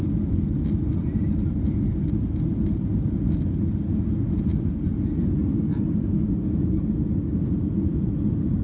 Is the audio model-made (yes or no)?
no